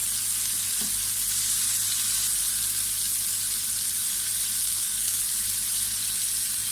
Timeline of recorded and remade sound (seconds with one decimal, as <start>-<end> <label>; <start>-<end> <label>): 0.0-4.6 recorded; 4.6-5.2 remade; 5.2-6.7 recorded

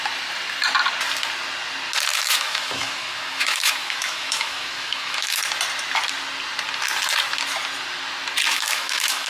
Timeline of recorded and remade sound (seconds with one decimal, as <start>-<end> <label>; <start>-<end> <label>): 0.0-2.1 recorded; 2.1-5.4 remade; 5.4-8.5 recorded; 8.5-9.3 remade